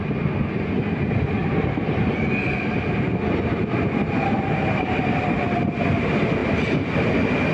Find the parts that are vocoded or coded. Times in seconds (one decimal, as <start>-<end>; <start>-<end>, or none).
none